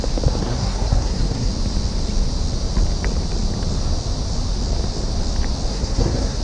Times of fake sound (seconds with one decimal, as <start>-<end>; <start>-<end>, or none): 0.4-1.5; 5.7-6.4